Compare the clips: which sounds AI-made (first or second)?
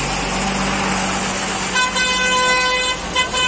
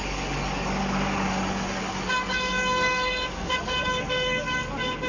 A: second